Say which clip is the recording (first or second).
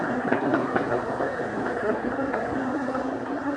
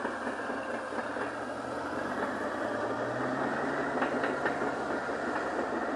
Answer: second